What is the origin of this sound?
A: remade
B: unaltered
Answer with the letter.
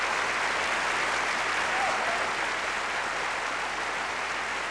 B